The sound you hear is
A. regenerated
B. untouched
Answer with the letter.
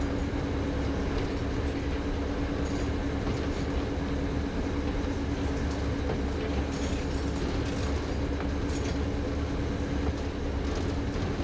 B